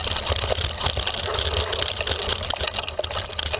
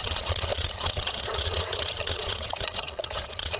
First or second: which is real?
first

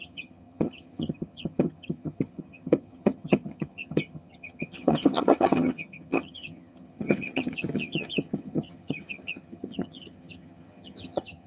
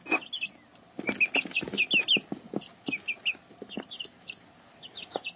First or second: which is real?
second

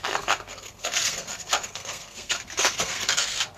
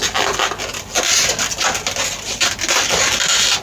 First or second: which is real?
second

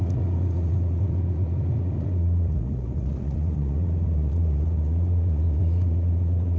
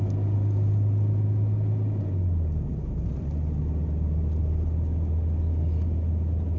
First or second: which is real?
second